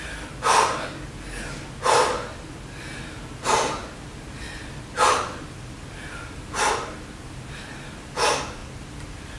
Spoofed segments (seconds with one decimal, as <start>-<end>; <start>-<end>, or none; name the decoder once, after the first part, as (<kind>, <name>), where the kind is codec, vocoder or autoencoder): 8.6-9.4 (vocoder, BigVGAN v2)